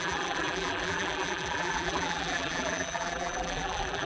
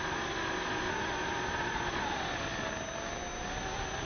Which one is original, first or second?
second